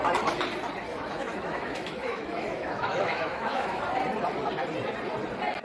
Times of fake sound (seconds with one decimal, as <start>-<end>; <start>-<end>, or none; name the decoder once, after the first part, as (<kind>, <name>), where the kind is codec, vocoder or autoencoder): 0.9-3.8 (autoencoder, DAC-VAE)